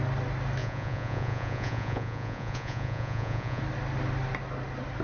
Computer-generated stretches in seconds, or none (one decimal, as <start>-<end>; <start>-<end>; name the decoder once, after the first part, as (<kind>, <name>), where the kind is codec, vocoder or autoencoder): 0.6-3.6 (vocoder, Vocos)